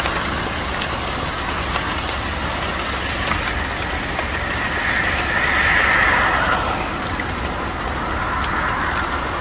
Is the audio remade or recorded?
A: recorded